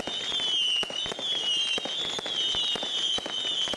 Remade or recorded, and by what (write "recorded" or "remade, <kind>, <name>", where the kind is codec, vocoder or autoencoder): recorded